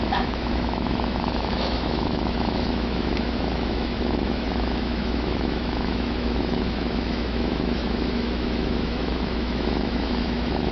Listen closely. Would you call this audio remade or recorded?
remade